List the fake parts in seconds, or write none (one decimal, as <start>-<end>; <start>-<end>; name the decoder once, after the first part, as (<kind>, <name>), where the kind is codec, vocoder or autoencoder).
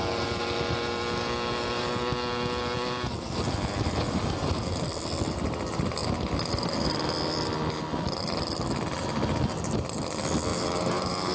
10.5-11.3 (vocoder, BigVGAN v2)